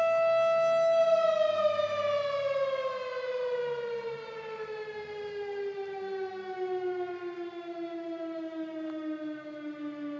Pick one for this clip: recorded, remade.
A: recorded